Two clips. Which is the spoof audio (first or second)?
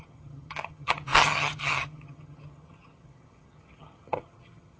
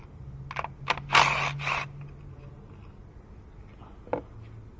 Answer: first